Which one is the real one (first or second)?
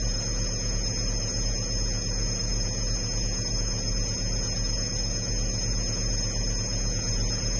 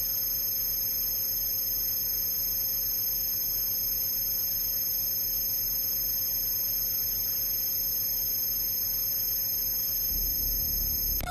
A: second